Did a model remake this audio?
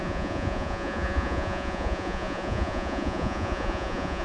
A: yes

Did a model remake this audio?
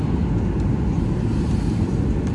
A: no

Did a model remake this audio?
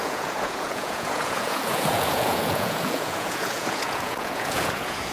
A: yes